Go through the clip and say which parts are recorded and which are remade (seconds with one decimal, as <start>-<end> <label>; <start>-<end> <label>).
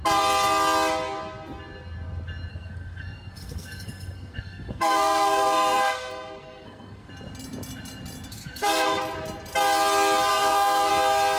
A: 0.0-2.5 recorded; 2.5-7.1 remade; 7.1-8.3 recorded; 8.3-9.0 remade; 9.0-10.3 recorded; 10.3-10.9 remade; 10.9-11.4 recorded